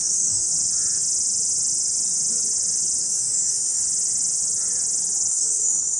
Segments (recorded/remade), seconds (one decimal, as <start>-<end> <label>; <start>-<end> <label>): 0.0-0.5 remade; 0.5-3.0 recorded; 3.0-3.8 remade; 3.8-5.3 recorded; 5.3-6.0 remade